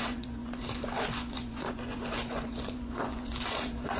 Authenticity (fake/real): fake